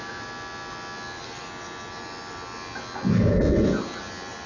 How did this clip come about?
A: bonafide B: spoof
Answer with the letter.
A